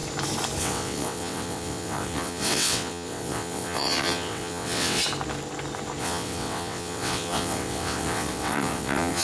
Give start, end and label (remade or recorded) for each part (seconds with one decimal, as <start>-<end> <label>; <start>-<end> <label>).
0.0-0.6 recorded; 0.6-5.0 remade; 5.0-6.0 recorded; 6.0-9.2 remade